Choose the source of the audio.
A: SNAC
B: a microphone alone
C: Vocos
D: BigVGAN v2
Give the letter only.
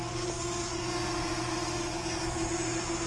B